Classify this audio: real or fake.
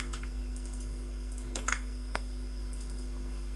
fake